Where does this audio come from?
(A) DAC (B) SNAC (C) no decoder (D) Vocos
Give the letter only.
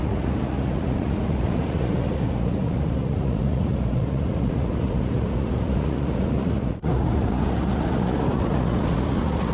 D